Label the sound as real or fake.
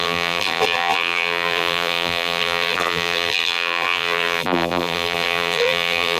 fake